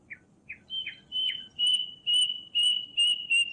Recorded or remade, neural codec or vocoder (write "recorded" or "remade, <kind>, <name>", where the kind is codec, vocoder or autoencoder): recorded